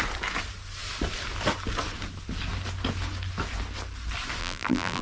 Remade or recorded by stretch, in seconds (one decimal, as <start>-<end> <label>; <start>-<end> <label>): 0.0-4.4 recorded; 4.4-5.0 remade